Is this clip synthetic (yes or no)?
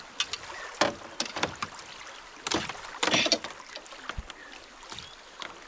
no